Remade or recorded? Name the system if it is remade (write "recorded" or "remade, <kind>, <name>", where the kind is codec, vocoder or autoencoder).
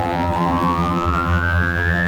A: remade, vocoder, BigVGAN v2